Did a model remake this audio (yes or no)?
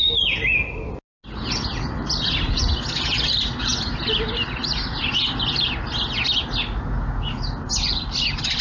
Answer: no